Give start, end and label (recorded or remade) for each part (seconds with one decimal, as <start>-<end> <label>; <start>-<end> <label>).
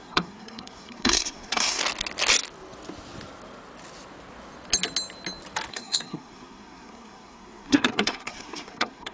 0.0-1.8 remade; 1.8-5.7 recorded; 5.7-9.1 remade